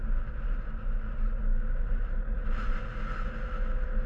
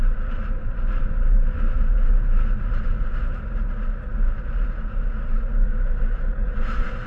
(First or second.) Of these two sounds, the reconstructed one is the second